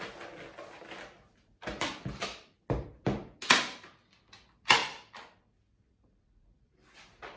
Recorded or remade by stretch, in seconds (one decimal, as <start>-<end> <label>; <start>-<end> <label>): 0.0-4.8 recorded; 4.8-7.0 remade; 7.0-7.4 recorded

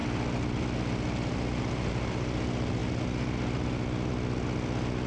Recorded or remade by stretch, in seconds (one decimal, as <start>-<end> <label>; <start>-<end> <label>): 0.0-5.1 recorded

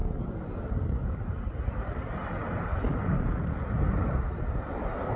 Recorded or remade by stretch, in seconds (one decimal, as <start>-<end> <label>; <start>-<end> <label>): 0.0-5.2 recorded

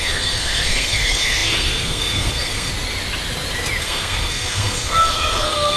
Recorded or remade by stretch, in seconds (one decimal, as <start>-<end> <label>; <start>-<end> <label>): 0.0-2.7 remade; 2.7-3.8 recorded; 3.8-5.8 remade

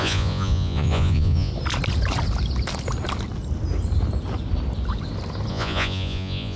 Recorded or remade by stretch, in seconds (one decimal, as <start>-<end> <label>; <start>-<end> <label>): 0.0-1.5 remade; 1.5-5.5 recorded; 5.5-6.6 remade

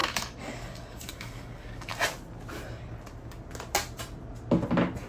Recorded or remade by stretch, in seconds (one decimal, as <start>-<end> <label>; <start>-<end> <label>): 0.0-1.9 remade; 1.9-5.1 recorded